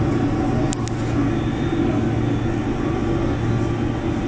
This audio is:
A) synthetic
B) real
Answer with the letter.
B